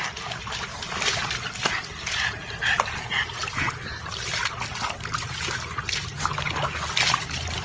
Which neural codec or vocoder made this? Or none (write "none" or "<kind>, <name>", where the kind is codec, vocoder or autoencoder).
none